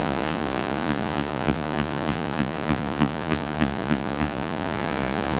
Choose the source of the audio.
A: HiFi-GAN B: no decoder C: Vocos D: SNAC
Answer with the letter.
C